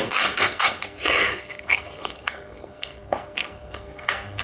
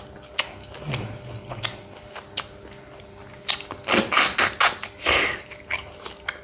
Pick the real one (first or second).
second